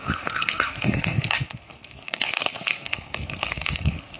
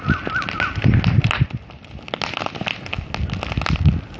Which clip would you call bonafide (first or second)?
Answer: second